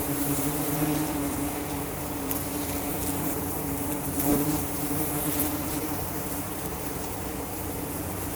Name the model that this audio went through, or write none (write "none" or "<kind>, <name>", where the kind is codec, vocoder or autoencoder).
vocoder, BigVGAN v2